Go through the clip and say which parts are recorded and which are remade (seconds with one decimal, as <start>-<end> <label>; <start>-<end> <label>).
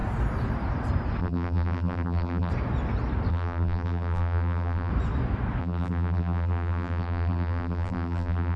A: 0.0-1.2 recorded; 1.2-2.5 remade; 2.5-3.3 recorded; 3.3-4.9 remade; 4.9-5.6 recorded; 5.6-8.6 remade